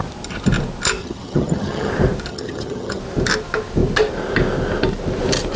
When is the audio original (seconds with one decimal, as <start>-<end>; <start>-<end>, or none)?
0.0-1.0; 1.9-2.3; 3.0-5.6